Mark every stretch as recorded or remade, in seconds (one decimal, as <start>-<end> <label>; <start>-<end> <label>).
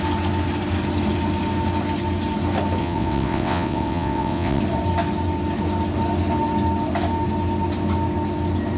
0.0-2.8 recorded; 2.8-4.6 remade; 4.6-8.8 recorded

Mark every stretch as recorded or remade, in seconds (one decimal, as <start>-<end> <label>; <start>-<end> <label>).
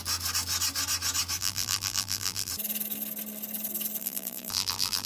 0.0-1.4 recorded; 1.4-2.5 remade; 2.5-4.0 recorded; 4.0-5.1 remade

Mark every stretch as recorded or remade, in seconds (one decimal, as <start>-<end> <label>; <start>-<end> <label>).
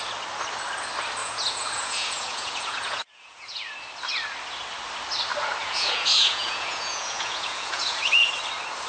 0.0-1.2 recorded; 1.2-3.7 remade; 3.7-5.6 recorded; 5.6-8.3 remade; 8.3-8.9 recorded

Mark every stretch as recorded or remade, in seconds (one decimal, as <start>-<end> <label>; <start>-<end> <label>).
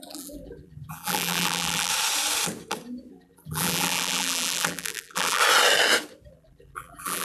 0.0-1.9 remade; 1.9-3.1 recorded; 3.1-5.4 remade; 5.4-6.3 recorded; 6.3-7.2 remade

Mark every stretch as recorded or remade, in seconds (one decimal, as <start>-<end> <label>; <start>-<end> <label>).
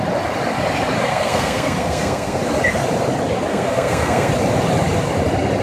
0.0-1.1 recorded; 1.1-2.4 remade; 2.4-3.5 recorded; 3.5-4.3 remade; 4.3-5.6 recorded